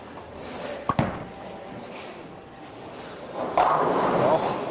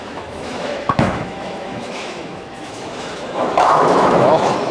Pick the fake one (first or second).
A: second